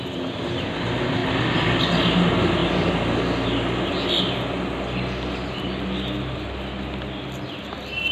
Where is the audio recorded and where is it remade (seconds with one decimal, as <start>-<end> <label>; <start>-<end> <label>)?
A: 0.0-8.1 recorded